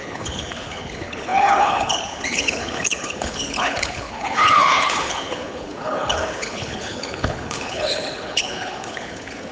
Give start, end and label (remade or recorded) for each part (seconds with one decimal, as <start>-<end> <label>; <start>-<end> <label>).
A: 0.0-9.5 remade